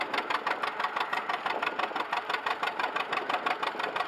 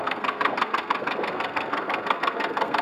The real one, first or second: first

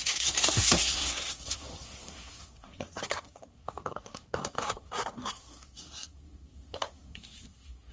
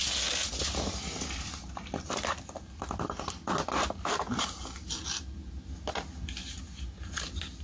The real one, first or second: second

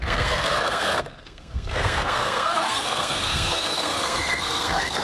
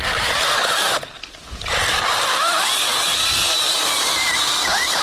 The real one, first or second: second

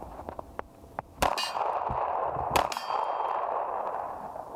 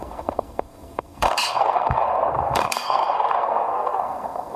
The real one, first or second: first